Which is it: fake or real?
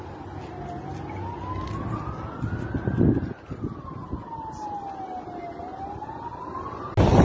real